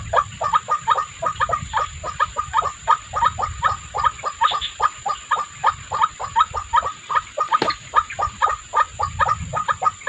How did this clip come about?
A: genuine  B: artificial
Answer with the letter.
A